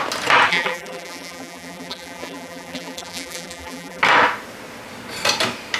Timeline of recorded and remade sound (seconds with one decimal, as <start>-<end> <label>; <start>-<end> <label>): 0.0-0.5 recorded; 0.5-4.0 remade; 4.0-5.8 recorded